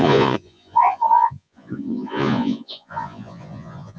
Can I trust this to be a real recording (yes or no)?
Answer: no